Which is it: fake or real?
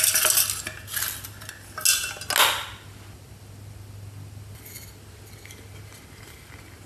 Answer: real